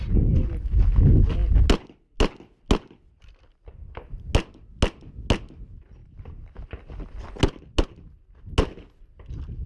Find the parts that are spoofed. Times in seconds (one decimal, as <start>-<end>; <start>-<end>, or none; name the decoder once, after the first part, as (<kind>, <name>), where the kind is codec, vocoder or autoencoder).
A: none